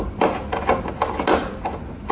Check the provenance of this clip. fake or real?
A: real